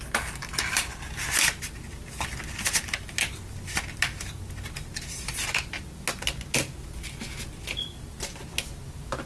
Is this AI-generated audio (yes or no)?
no